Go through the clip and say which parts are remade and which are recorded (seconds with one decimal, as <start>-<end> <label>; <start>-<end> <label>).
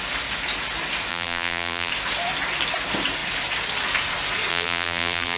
0.0-1.1 recorded; 1.1-1.9 remade; 1.9-4.5 recorded; 4.5-5.4 remade